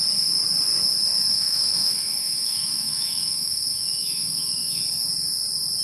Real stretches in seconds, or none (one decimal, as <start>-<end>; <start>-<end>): 0.0-1.3; 4.8-5.8